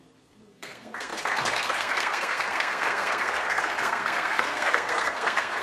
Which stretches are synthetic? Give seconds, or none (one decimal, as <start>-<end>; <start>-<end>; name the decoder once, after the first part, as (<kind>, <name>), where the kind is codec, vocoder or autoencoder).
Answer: 0.0-5.6 (codec, SNAC)

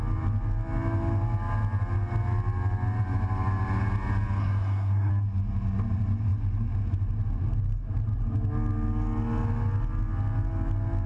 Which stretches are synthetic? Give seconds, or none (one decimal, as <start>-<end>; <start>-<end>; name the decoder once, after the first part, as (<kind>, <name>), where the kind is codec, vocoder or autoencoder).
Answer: 4.4-5.1 (codec, SNAC)